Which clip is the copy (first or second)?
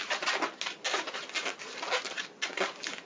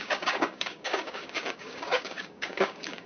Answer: second